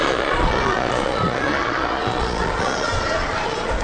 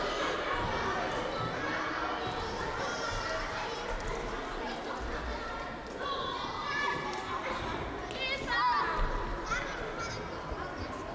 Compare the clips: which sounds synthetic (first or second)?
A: first